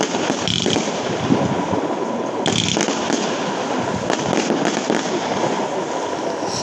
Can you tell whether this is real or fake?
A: real